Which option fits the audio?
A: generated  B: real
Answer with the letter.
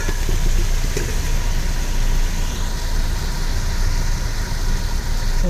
B